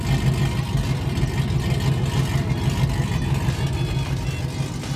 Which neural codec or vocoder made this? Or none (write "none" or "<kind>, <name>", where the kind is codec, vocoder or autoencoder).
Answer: none